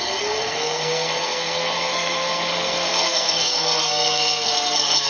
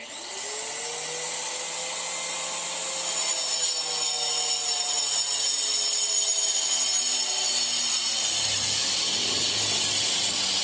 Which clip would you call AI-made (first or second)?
first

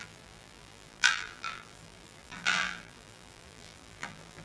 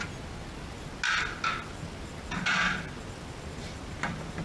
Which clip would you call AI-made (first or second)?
first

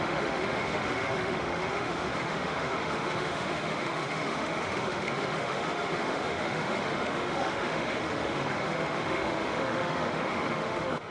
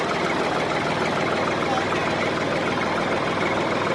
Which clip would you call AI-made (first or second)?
first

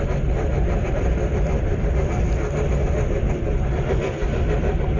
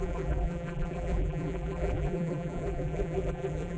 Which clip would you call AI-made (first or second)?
second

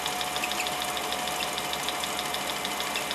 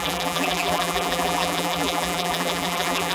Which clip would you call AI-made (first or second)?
second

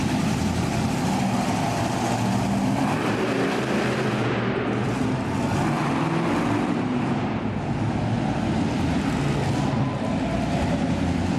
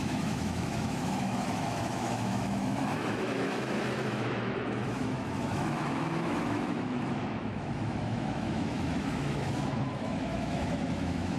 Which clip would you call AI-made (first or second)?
second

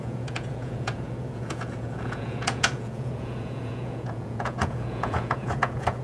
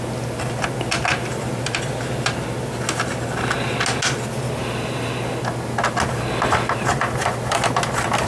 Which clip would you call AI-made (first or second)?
first